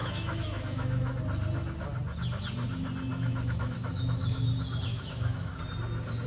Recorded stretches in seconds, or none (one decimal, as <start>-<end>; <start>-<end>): 1.2-3.1; 4.5-4.9; 5.6-6.3